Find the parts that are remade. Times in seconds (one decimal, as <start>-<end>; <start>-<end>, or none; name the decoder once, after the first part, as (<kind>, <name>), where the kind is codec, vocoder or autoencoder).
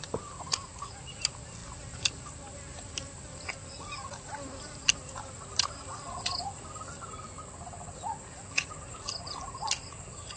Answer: none